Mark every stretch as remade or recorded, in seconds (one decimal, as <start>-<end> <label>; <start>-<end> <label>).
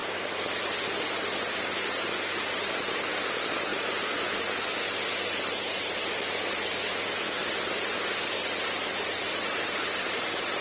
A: 0.0-7.4 recorded; 7.4-10.6 remade